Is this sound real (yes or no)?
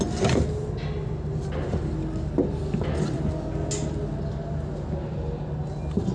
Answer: yes